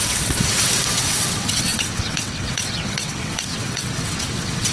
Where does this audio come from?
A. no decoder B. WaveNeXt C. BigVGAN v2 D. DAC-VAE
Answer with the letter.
B